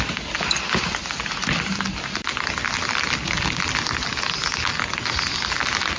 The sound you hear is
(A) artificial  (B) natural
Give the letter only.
B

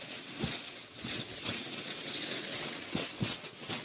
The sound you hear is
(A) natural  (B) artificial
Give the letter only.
B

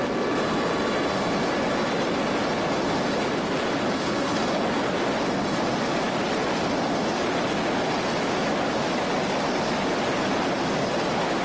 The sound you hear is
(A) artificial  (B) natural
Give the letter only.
B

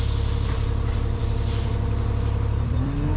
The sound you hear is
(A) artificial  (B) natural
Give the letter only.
A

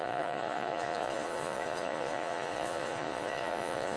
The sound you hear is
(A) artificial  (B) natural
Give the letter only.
A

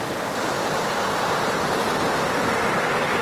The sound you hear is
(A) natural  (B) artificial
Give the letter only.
A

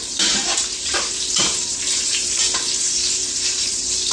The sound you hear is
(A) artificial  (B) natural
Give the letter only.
A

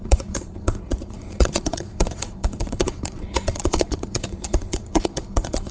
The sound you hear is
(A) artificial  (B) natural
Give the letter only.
A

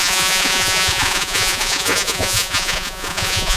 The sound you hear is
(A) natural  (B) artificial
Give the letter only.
B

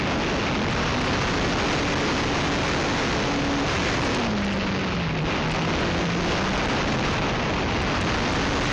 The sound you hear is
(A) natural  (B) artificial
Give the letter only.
A